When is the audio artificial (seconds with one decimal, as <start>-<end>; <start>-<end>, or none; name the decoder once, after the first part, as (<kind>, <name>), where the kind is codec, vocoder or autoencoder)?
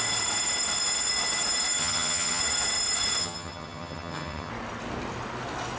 1.8-2.4 (vocoder, HiFi-GAN); 3.2-4.5